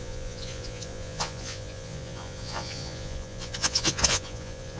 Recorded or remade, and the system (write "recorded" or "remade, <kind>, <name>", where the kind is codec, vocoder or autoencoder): remade, vocoder, Vocos